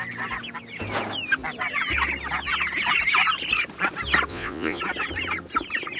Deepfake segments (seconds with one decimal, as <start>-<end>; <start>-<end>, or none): 4.3-4.8